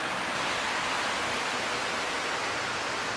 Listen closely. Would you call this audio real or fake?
real